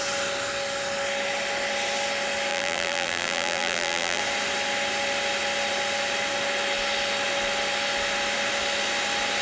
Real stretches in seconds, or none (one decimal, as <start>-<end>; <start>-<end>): 0.0-2.5; 4.2-9.4